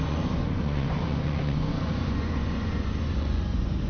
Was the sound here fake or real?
fake